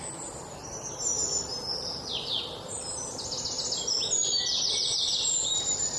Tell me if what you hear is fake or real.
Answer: real